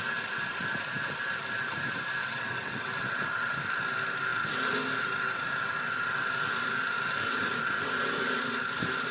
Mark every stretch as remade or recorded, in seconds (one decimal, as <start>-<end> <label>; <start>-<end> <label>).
0.0-2.2 recorded; 2.2-2.9 remade; 2.9-9.1 recorded